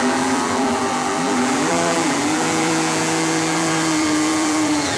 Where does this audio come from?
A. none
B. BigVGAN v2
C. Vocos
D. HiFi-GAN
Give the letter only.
B